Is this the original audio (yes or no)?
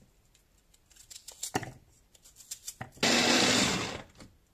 yes